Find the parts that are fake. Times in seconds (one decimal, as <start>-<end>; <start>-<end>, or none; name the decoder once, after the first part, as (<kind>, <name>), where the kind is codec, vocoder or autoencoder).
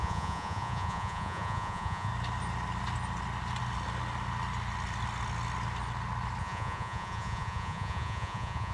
0.0-2.1 (vocoder, Vocos); 6.4-8.7